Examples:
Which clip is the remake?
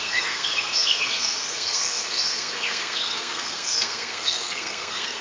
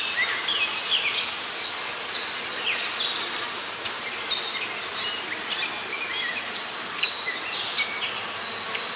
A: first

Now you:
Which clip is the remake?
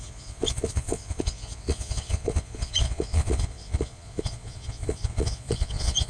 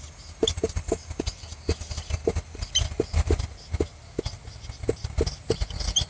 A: first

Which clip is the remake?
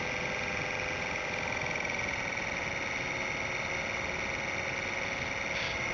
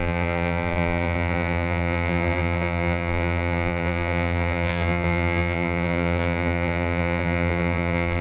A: second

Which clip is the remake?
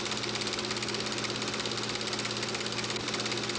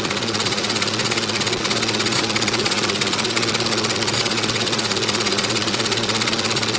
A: second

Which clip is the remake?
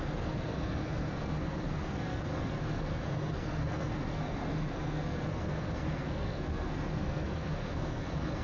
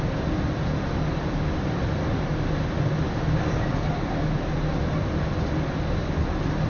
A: first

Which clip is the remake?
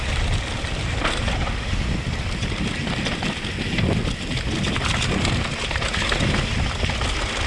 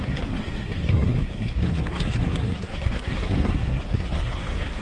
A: second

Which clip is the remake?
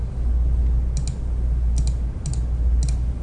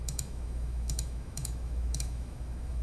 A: second